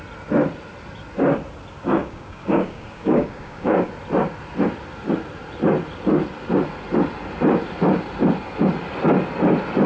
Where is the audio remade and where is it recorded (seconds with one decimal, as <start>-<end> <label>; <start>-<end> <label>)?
0.0-2.0 recorded; 2.0-3.9 remade; 3.9-9.9 recorded